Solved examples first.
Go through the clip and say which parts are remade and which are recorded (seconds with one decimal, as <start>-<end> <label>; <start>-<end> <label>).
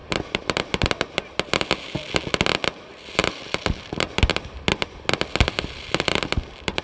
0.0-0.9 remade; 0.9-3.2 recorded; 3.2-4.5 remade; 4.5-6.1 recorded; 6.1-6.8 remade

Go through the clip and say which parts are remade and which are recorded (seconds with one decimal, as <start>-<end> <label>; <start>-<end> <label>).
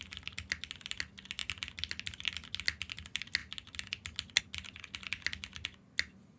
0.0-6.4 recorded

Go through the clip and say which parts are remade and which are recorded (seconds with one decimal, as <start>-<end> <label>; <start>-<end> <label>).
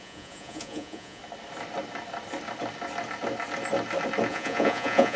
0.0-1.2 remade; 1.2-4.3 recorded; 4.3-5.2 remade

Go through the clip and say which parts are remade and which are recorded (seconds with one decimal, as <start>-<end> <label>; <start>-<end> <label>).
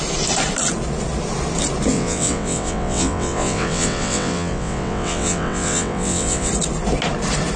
0.0-1.9 recorded; 1.9-6.5 remade; 6.5-7.6 recorded